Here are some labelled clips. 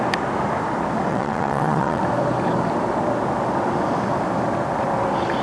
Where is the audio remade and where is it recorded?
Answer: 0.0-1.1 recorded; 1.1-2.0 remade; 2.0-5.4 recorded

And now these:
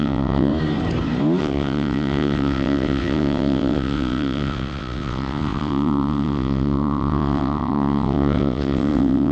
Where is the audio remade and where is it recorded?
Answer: 0.0-0.5 remade; 0.5-1.4 recorded; 1.4-9.3 remade

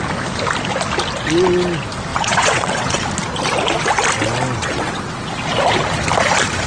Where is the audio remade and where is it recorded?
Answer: 0.0-2.1 recorded; 2.1-3.0 remade; 3.0-4.6 recorded; 4.6-5.4 remade; 5.4-6.7 recorded

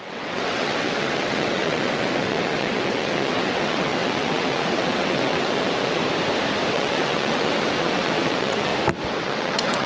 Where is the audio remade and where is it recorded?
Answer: 0.0-6.0 remade; 6.0-6.7 recorded; 6.7-8.7 remade; 8.7-9.2 recorded; 9.2-9.9 remade

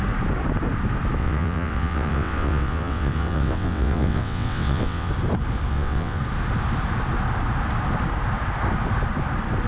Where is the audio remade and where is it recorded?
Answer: 0.0-1.2 recorded; 1.2-5.1 remade; 5.1-5.7 recorded; 5.7-6.2 remade; 6.2-9.7 recorded

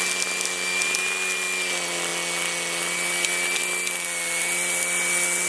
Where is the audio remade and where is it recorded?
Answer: 0.0-5.5 recorded

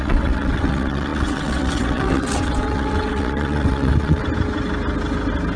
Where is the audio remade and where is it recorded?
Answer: 0.0-4.2 remade; 4.2-5.6 recorded